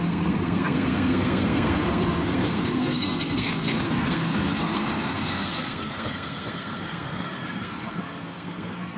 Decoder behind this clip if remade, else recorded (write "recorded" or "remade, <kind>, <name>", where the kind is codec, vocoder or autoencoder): remade, codec, SNAC